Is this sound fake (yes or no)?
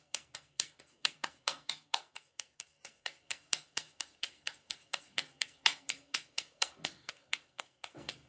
yes